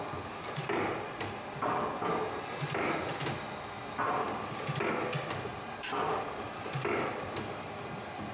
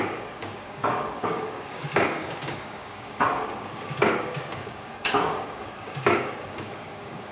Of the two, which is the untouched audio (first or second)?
first